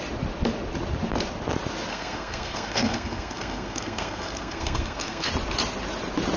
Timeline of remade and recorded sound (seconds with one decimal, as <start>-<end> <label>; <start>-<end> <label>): 0.0-1.9 recorded; 1.9-5.3 remade; 5.3-6.4 recorded